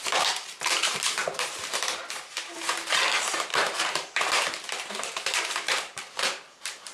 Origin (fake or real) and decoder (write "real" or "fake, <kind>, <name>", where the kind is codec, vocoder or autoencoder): fake, vocoder, BigVGAN v2